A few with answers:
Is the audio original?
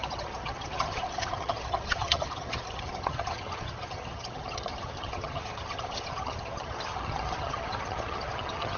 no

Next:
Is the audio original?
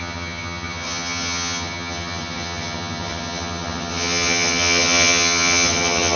no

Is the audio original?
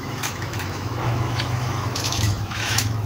no